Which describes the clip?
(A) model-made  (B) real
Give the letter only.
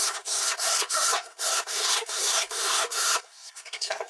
A